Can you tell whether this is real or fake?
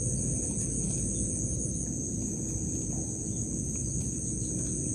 real